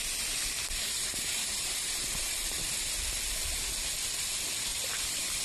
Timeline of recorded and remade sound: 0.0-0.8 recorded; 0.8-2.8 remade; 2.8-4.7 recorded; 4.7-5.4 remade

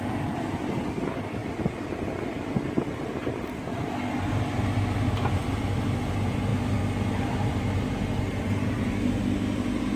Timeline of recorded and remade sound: 0.0-10.0 recorded

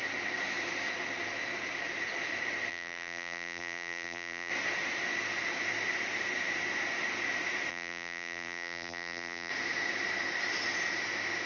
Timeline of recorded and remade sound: 0.0-2.7 recorded; 2.7-4.5 remade; 4.5-7.7 recorded; 7.7-9.5 remade; 9.5-11.5 recorded

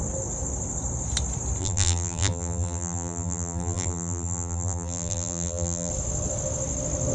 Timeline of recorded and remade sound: 0.0-1.6 recorded; 1.6-5.9 remade; 5.9-7.1 recorded